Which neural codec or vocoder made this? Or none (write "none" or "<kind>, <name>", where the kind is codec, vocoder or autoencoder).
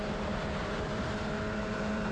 vocoder, BigVGAN v2